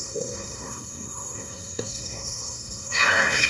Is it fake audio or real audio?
fake